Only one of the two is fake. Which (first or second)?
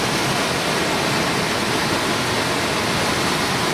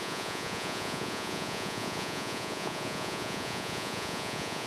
second